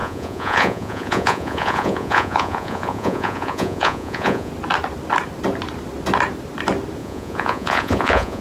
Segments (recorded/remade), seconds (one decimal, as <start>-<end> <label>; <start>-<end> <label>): 0.0-4.5 remade; 4.5-7.0 recorded; 7.0-8.4 remade